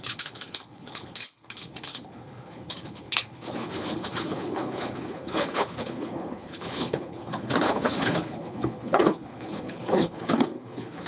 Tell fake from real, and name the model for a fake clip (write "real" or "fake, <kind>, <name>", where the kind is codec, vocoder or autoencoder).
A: fake, codec, HILCodec